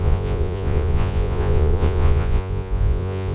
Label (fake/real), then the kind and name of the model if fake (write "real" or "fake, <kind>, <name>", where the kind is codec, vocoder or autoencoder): fake, vocoder, Vocos